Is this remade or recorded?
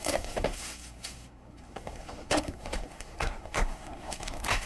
remade